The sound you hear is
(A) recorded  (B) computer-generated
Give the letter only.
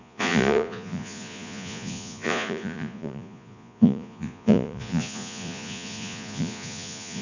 B